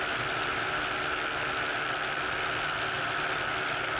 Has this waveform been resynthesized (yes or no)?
no